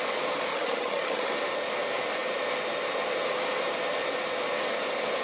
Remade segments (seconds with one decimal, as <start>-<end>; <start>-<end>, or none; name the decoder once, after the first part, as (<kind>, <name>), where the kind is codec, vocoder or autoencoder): 0.5-1.3 (vocoder, HiFi-GAN)